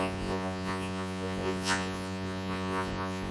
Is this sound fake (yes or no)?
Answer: yes